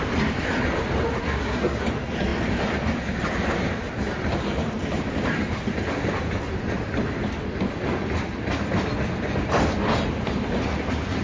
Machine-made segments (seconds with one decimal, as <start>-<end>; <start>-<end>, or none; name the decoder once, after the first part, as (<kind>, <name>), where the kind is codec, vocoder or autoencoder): 1.2-1.8 (codec, SNAC)